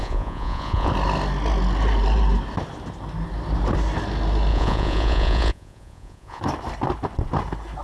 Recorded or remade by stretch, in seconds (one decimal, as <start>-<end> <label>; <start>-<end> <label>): 0.0-0.9 remade; 0.9-4.5 recorded; 4.5-6.4 remade; 6.4-7.8 recorded